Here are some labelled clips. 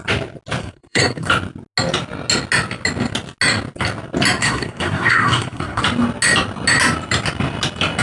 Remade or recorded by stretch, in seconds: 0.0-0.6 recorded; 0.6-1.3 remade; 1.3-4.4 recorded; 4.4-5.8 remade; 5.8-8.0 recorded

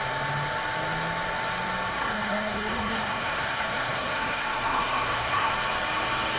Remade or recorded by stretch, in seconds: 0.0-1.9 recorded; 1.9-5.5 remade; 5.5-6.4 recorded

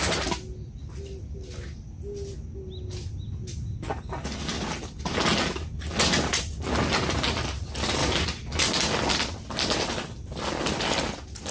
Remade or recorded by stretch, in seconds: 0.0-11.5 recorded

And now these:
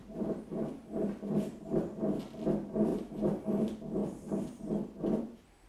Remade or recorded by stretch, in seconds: 0.0-0.7 remade; 0.7-2.9 recorded; 2.9-3.4 remade; 3.4-5.7 recorded

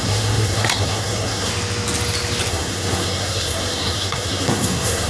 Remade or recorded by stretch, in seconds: 0.0-1.5 remade; 1.5-2.5 recorded; 2.5-5.1 remade

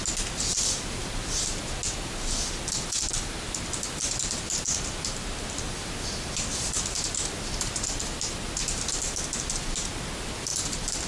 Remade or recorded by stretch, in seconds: 0.0-11.1 recorded

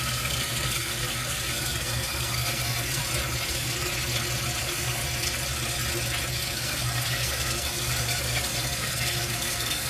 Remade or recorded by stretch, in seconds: 0.0-3.0 remade; 3.0-3.5 recorded; 3.5-3.9 remade; 3.9-4.6 recorded; 4.6-5.0 remade; 5.0-6.3 recorded; 6.3-9.9 remade